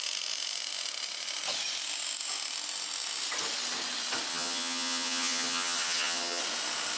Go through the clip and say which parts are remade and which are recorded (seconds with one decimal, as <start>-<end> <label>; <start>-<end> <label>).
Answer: 0.0-4.3 recorded; 4.3-6.4 remade; 6.4-7.0 recorded